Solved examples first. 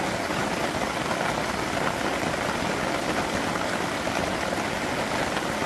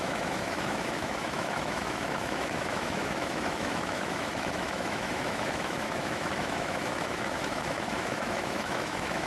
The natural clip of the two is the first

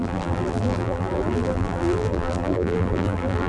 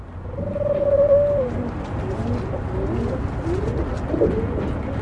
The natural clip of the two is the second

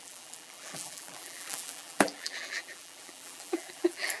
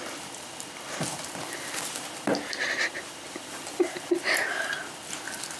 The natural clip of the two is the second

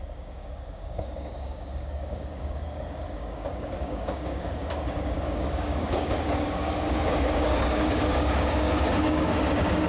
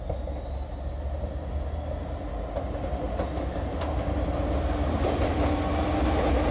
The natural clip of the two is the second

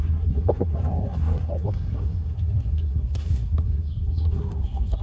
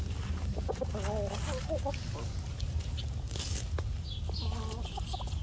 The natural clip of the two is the second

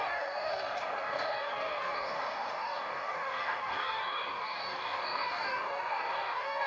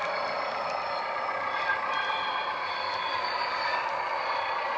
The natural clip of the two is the second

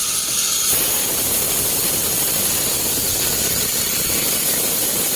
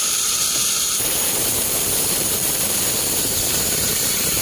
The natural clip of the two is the first